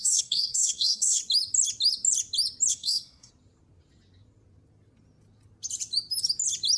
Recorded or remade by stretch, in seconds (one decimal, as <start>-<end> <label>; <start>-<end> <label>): 0.0-1.2 remade; 1.2-2.7 recorded; 2.7-3.3 remade; 3.3-6.8 recorded